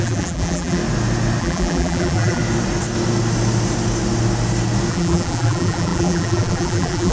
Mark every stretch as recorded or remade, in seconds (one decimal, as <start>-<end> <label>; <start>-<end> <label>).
0.0-0.8 remade; 0.8-1.4 recorded; 1.4-2.4 remade; 2.4-4.9 recorded; 4.9-7.1 remade